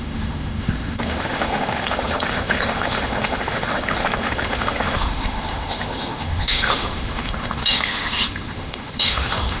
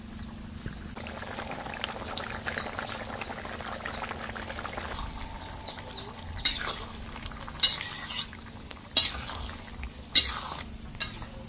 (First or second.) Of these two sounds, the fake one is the first